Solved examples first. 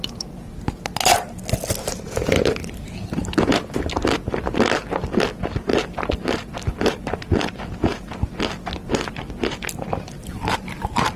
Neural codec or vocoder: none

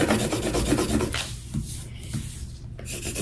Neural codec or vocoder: none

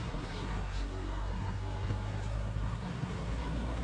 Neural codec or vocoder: codec, SNAC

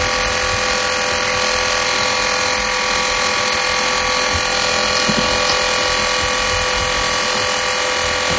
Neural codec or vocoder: none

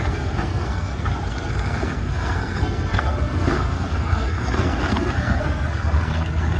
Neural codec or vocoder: codec, SNAC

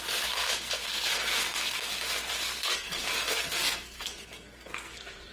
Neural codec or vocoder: codec, SNAC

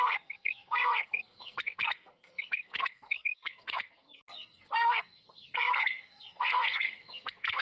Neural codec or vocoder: codec, SNAC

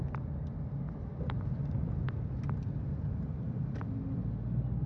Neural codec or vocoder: none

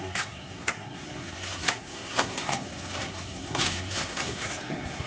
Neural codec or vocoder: codec, SNAC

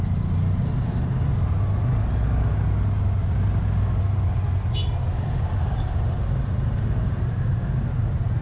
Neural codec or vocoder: none